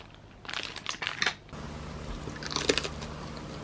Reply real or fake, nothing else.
real